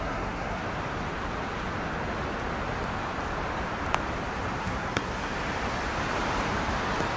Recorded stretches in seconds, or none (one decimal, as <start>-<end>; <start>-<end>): 0.6-4.6; 5.3-7.2